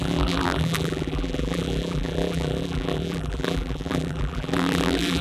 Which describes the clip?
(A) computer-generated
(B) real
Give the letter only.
A